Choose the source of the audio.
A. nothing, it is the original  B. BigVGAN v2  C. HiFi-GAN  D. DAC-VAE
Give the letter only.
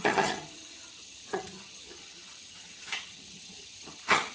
C